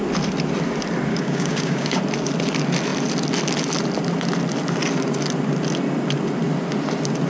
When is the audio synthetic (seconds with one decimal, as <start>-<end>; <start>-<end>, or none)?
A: 1.1-2.0